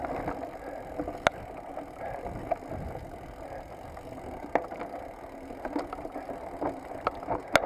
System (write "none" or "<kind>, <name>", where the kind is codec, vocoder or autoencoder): none